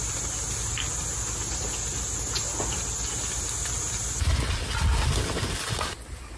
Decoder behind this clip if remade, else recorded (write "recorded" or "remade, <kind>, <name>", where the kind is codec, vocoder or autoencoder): recorded